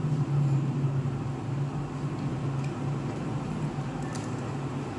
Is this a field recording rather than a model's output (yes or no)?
yes